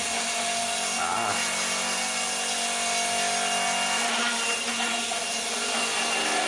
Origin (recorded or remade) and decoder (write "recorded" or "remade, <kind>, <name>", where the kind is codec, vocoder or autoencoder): recorded